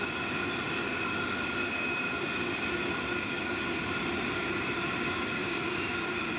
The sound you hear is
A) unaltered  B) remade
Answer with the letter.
A